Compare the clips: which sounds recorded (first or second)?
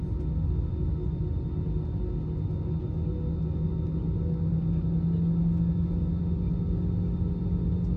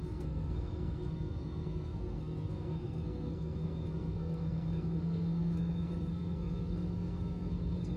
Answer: first